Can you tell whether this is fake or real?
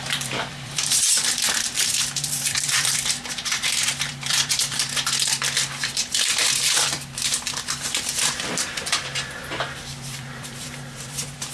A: fake